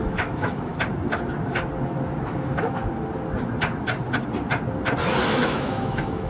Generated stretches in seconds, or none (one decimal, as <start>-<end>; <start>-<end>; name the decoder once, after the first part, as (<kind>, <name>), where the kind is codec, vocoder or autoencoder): 0.0-0.7 (autoencoder, DAC-VAE); 2.3-2.8; 5.3-6.3